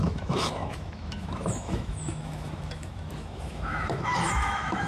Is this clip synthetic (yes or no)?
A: yes